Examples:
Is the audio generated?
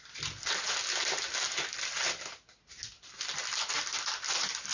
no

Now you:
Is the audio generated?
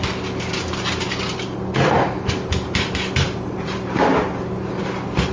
no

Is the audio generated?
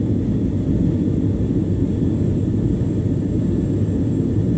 no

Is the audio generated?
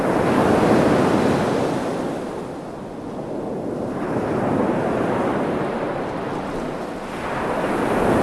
no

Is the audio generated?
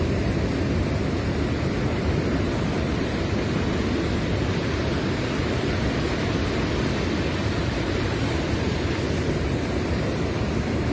no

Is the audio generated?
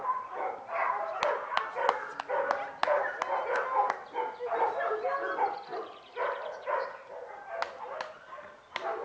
no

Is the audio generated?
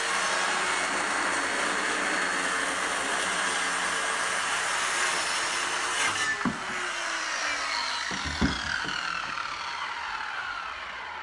no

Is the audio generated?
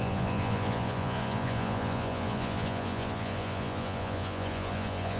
yes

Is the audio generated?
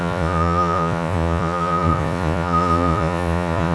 yes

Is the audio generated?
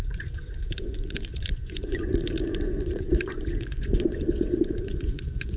yes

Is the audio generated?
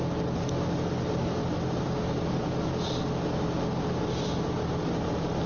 no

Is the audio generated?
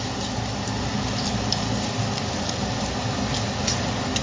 no